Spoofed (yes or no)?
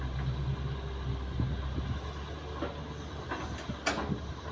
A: no